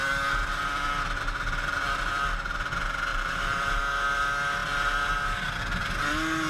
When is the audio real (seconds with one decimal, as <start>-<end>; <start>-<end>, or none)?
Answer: 0.0-3.1; 3.8-6.5

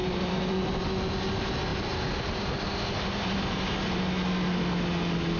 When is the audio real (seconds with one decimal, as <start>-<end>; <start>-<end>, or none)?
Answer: 0.8-1.7; 2.6-5.4